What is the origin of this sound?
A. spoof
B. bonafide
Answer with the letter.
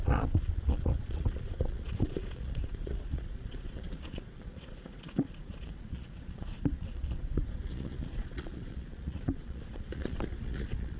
A